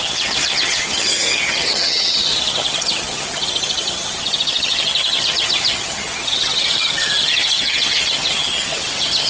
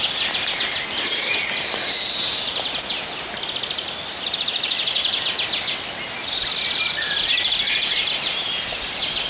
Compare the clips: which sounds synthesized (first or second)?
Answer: first